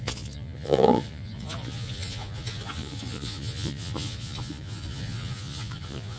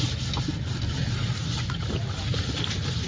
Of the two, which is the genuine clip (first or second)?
second